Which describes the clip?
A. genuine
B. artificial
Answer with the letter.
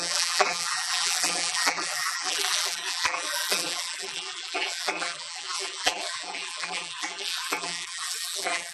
B